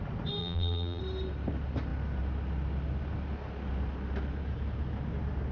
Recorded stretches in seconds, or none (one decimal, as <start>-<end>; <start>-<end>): 0.0-0.4; 1.0-5.5